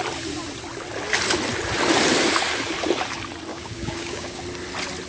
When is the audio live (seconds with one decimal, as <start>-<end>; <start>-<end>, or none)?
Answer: 0.0-3.5; 4.4-5.1